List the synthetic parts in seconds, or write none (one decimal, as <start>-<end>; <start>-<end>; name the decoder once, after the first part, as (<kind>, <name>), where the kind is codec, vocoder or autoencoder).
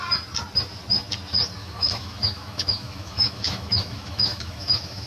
1.6-5.1 (autoencoder, DAC-VAE)